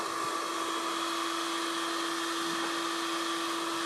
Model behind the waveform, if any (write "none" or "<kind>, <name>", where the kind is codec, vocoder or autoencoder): none